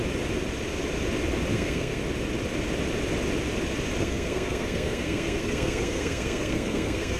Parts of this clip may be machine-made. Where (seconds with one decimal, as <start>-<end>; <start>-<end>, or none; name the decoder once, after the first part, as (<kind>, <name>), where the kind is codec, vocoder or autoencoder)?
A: 1.5-2.0 (codec, SNAC); 4.0-7.2